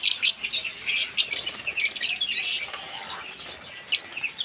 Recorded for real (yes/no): yes